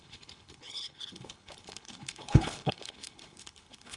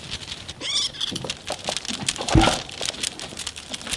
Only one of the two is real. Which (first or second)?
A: second